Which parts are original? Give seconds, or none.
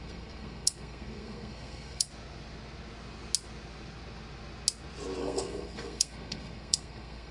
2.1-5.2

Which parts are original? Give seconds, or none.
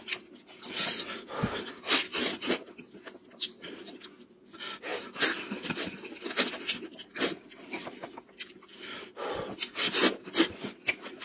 0.0-11.2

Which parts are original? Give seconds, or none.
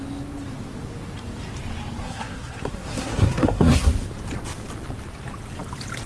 0.0-2.0; 3.9-6.1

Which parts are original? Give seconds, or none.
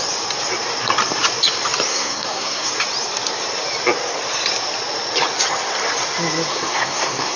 0.0-1.9; 2.7-6.5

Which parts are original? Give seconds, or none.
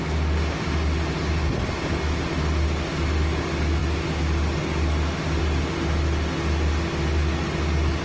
0.0-8.0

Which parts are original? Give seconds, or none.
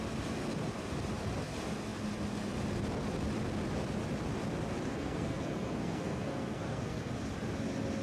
0.0-4.9; 7.1-8.0